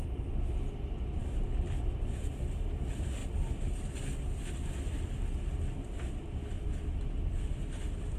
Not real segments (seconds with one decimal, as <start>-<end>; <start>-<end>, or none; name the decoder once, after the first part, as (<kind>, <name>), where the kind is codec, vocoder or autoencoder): none